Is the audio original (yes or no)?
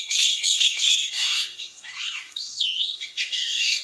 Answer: no